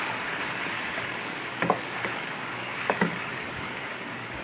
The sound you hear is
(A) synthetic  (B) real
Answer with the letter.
A